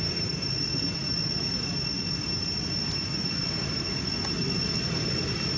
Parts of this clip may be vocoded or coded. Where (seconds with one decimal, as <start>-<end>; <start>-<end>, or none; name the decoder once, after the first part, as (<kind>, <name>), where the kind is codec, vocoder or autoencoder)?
none

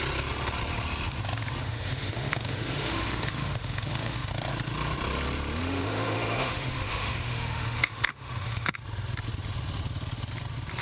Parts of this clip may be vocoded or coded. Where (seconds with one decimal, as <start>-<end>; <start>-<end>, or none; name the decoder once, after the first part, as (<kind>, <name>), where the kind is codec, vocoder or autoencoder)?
1.6-4.3 (autoencoder, DAC-VAE); 5.6-8.8

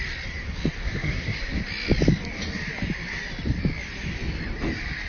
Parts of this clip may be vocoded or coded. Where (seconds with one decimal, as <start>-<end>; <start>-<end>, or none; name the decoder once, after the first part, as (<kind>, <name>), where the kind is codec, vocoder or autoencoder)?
0.8-1.6 (codec, SNAC)

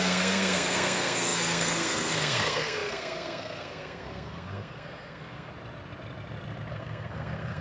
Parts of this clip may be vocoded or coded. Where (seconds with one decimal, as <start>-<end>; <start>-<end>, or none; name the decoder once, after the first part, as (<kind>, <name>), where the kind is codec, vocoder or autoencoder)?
0.0-5.5 (codec, SNAC); 6.7-7.6

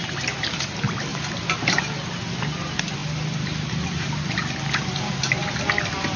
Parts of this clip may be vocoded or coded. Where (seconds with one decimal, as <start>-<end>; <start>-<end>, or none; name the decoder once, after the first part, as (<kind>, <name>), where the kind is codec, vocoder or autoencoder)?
none

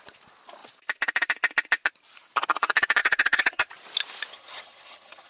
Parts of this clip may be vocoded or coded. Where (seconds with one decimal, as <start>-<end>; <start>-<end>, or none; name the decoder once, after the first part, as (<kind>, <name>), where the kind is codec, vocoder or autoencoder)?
3.0-3.7 (vocoder, HiFi-GAN); 4.3-5.3